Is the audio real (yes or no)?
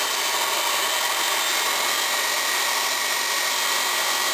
yes